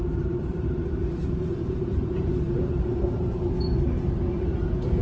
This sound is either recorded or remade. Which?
remade